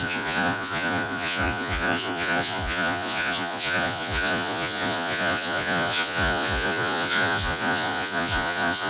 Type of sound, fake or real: fake